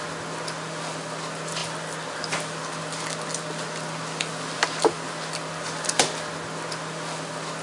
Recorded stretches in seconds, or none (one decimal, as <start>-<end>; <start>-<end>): 0.0-7.6